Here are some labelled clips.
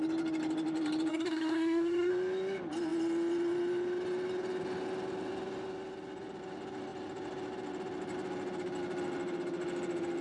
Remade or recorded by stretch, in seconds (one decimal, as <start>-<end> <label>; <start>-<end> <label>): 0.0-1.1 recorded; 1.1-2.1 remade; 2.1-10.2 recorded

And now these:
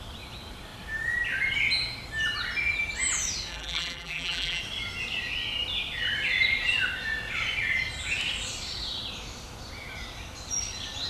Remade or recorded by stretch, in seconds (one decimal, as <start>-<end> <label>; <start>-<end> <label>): 0.0-3.5 recorded; 3.5-4.6 remade; 4.6-11.1 recorded

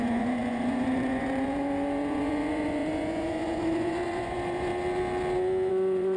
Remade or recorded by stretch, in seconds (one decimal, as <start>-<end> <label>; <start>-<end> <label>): 0.0-4.7 remade; 4.7-5.7 recorded; 5.7-6.2 remade

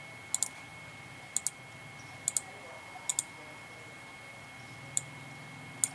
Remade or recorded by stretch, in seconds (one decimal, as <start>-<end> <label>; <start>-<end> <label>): 0.0-5.9 recorded